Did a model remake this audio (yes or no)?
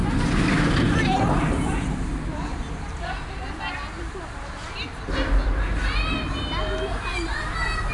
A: no